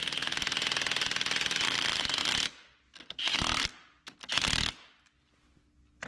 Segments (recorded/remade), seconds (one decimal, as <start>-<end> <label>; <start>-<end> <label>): 0.0-6.1 recorded